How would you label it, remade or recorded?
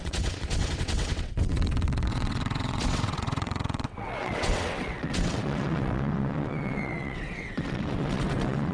remade